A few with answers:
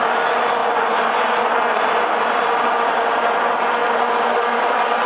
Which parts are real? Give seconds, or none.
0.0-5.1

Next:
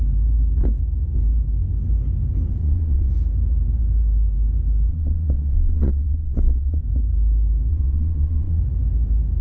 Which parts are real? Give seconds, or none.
0.0-2.6; 3.1-4.9; 6.8-7.7; 8.6-9.4